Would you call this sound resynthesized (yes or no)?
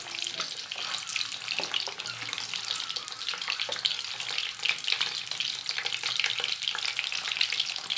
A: no